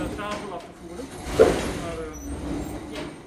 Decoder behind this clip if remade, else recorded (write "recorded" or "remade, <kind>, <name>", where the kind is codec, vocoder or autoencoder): recorded